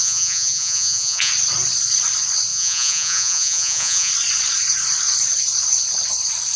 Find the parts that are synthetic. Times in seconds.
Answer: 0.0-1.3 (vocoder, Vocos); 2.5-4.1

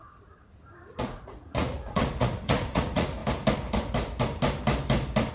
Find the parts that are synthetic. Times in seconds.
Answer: 0.0-0.5 (vocoder, Vocos); 1.0-3.2

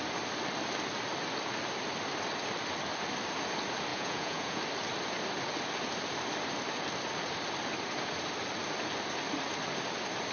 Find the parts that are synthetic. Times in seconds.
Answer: 3.9-4.6 (vocoder, Vocos)

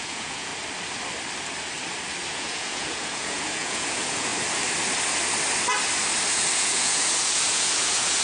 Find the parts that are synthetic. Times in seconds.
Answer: 0.0-0.5 (vocoder, Vocos); 2.3-4.3; 6.3-8.2

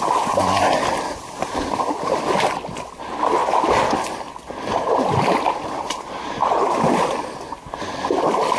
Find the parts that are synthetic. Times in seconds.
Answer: none

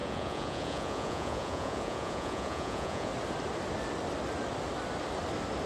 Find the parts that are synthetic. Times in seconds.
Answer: 0.0-3.1 (vocoder, Vocos)